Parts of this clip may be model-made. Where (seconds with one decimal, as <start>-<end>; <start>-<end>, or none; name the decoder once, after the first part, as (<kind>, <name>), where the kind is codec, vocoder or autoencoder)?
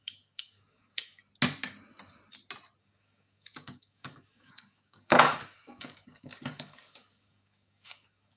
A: 0.0-1.2 (codec, DAC); 2.8-8.4